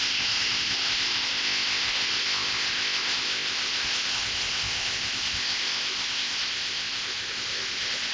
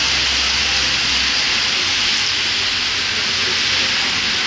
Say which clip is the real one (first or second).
second